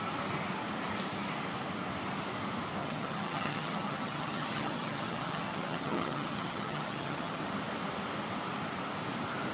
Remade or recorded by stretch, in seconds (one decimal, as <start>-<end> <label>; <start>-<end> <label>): 0.0-2.8 recorded; 2.8-7.4 remade; 7.4-9.5 recorded